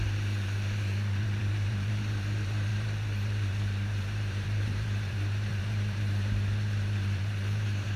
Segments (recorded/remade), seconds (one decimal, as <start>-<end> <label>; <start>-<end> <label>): 0.0-8.0 remade